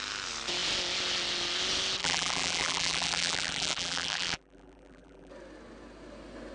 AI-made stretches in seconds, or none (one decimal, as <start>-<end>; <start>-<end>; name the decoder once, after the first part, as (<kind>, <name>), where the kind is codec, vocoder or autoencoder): 2.0-5.3 (vocoder, BigVGAN v2)